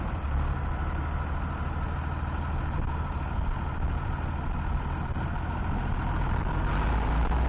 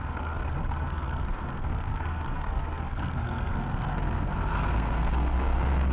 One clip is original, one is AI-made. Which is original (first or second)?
first